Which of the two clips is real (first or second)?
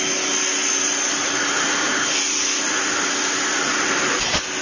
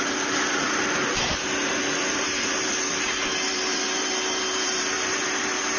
first